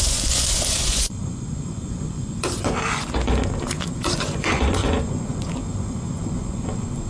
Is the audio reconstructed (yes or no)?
yes